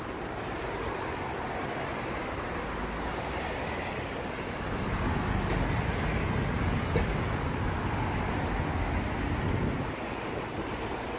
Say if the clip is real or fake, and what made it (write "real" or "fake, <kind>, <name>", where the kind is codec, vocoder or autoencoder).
real